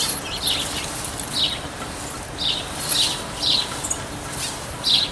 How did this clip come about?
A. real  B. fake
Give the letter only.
A